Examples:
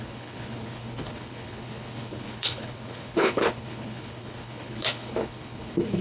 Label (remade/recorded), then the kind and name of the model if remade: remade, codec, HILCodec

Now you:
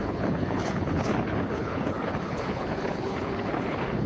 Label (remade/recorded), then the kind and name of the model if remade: remade, codec, HILCodec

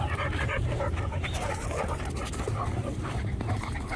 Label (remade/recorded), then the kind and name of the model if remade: recorded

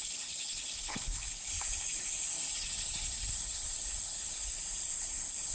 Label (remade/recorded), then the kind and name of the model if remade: remade, codec, HILCodec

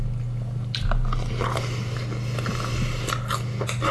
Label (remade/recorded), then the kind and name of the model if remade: recorded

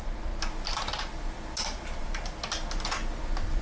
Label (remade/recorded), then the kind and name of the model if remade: recorded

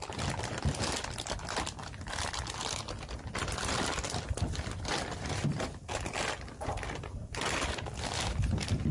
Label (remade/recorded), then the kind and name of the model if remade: recorded